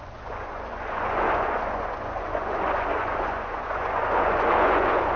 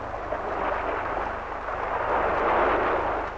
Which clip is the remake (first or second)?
first